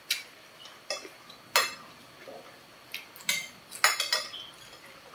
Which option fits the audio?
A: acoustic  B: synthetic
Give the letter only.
A